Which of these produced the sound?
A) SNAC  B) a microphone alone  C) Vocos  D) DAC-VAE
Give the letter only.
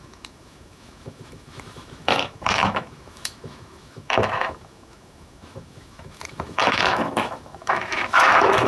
D